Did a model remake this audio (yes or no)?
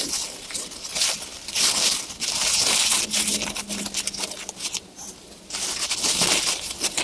no